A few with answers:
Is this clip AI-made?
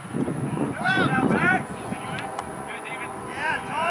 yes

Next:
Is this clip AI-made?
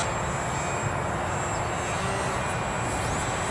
no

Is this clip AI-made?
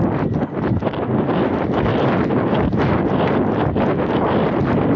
no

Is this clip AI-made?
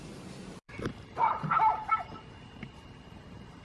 yes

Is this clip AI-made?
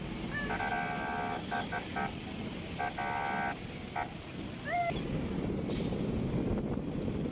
no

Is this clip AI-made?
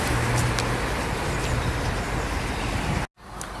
no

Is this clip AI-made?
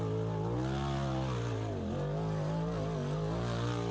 no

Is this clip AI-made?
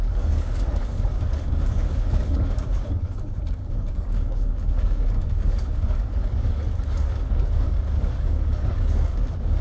yes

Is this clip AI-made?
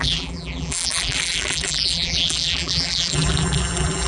yes